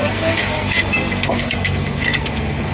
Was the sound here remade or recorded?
remade